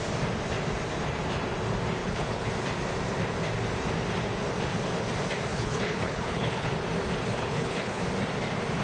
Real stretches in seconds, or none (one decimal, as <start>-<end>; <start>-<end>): 0.0-2.0; 2.5-5.5; 6.7-7.3; 8.0-8.8